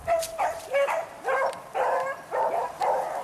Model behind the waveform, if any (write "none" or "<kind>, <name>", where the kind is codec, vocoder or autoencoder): vocoder, BigVGAN v2